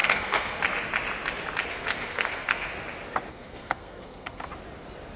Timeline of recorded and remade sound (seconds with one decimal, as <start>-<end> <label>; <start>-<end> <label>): 0.0-0.6 remade; 0.6-1.7 recorded; 1.7-2.7 remade; 2.7-3.3 recorded; 3.3-4.5 remade; 4.5-5.2 recorded